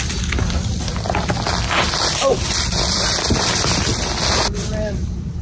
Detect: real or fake real